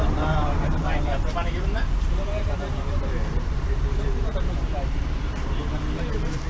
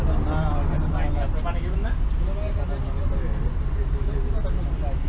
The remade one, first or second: first